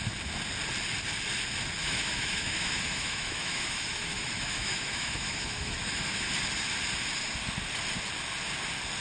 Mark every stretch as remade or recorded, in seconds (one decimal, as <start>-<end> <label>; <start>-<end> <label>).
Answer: 0.0-1.8 recorded; 1.8-6.3 remade; 6.3-9.0 recorded